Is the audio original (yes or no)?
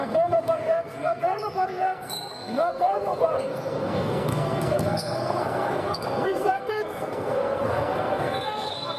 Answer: no